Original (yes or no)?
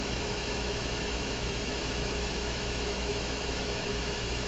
no